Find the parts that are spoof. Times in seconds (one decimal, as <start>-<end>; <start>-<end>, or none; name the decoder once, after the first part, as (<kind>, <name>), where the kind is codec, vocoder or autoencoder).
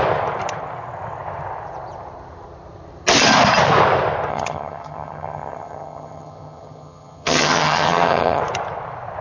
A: 4.3-8.4 (vocoder, HiFi-GAN)